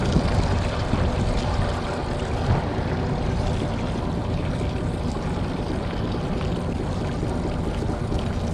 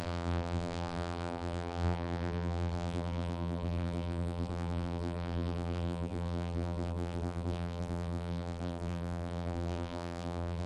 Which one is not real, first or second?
second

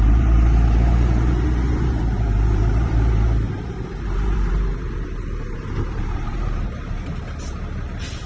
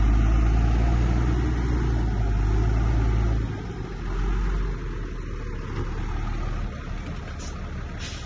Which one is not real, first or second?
first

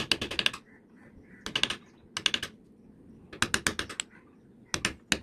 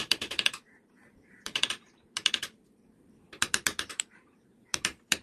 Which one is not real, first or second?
second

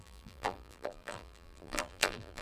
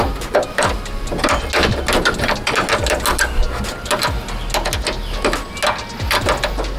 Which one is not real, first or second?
first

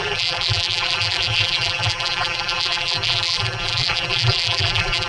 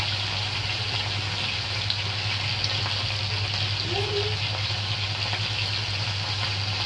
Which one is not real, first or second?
first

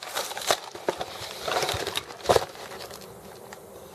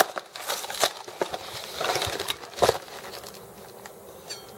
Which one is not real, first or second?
first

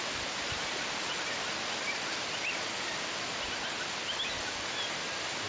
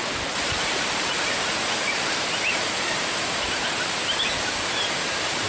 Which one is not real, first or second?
second